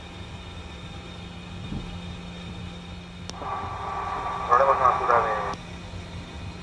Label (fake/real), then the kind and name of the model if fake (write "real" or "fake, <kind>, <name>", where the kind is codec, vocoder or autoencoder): real